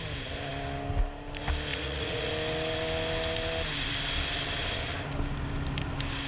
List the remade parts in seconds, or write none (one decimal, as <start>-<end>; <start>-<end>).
1.7-2.3